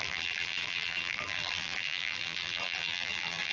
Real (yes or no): no